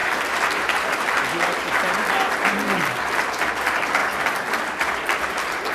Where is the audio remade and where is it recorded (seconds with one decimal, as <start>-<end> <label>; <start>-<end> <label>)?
0.0-5.7 recorded